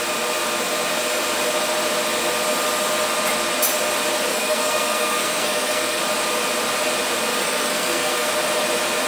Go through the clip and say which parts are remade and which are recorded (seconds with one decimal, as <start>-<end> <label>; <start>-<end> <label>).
0.0-4.3 recorded; 4.3-6.0 remade; 6.0-7.3 recorded; 7.3-8.3 remade; 8.3-9.1 recorded